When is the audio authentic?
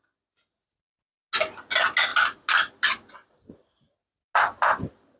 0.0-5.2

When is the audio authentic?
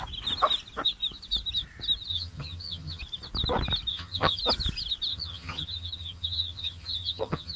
0.0-2.1; 3.0-3.9; 4.4-5.1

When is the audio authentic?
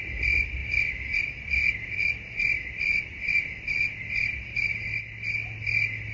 0.0-0.6; 1.2-2.5; 4.9-6.1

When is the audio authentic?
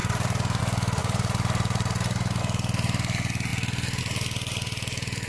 0.6-1.0; 2.4-5.3